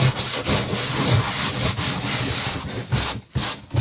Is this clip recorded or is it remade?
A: recorded